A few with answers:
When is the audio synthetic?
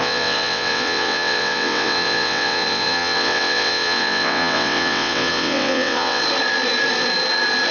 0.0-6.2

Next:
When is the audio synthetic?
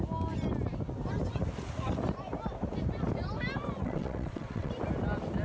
3.8-4.7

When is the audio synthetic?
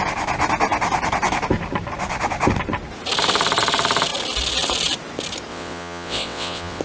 5.5-6.8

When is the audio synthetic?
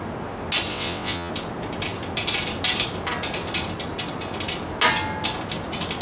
0.7-1.3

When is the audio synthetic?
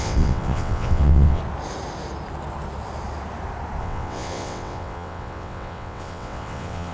0.0-1.4; 3.8-6.9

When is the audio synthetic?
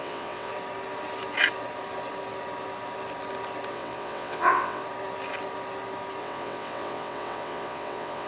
0.0-0.5; 3.7-4.8; 6.2-8.3